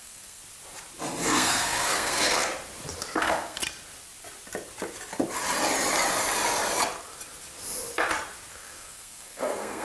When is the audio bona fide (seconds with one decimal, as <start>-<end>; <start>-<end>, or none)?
0.4-1.2; 2.5-3.2; 3.6-8.5